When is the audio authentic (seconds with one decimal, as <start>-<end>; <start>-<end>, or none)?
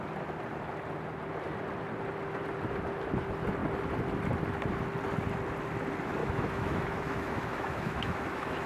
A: 0.0-6.2